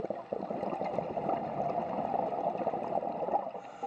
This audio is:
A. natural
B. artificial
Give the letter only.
A